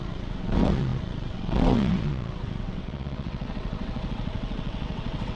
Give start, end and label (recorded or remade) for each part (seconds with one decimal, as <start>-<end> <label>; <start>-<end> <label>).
0.0-5.4 remade